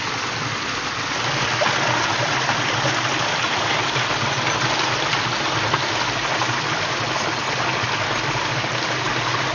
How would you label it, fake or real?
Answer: real